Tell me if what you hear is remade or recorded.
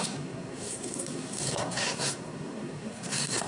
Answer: remade